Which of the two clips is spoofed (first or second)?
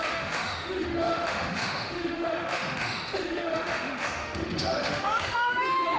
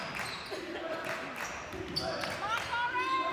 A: first